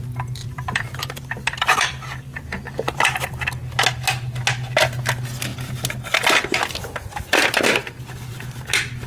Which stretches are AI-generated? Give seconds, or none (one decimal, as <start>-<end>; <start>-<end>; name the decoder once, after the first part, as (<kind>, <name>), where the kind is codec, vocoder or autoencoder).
0.4-3.4 (vocoder, BigVGAN v2)